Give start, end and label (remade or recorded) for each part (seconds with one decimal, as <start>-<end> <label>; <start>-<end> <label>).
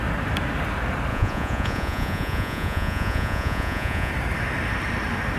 0.0-1.1 recorded; 1.1-4.1 remade; 4.1-5.4 recorded